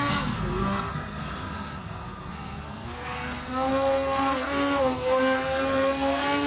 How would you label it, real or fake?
fake